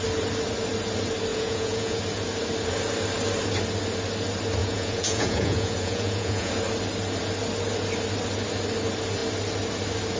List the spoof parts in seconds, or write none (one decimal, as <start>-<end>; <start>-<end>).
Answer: 1.3-2.0; 4.6-6.5